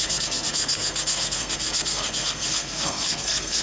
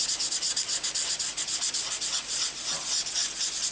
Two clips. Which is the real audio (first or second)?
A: second